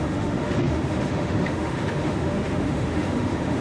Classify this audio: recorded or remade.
remade